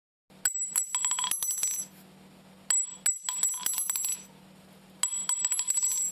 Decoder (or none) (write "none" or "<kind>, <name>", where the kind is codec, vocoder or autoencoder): none